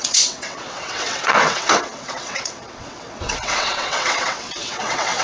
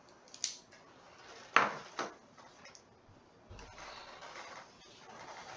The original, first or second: second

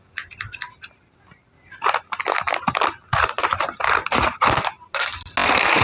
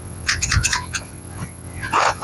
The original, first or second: first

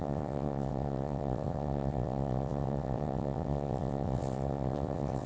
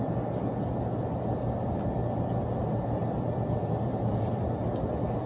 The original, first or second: second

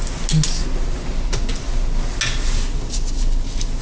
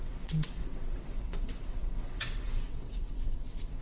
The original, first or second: first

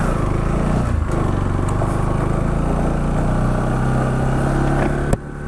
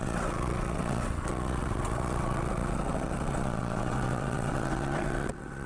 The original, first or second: first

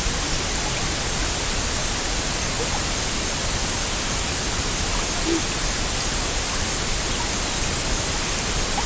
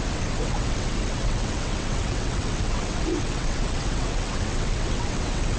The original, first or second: first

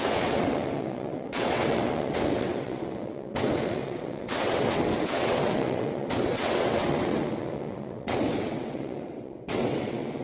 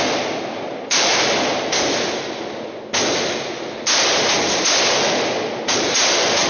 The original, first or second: second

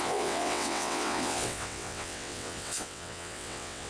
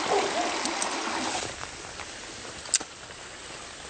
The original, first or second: second